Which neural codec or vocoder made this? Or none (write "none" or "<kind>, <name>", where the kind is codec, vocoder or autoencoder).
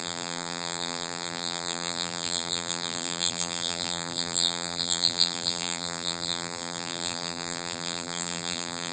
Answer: vocoder, BigVGAN v2